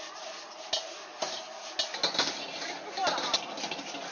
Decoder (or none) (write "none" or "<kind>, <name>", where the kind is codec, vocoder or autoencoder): none